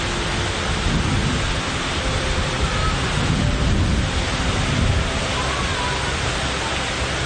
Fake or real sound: real